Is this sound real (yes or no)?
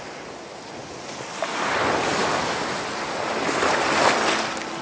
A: yes